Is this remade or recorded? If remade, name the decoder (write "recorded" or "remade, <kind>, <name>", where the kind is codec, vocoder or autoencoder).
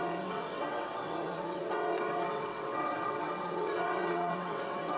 remade, vocoder, WaveNeXt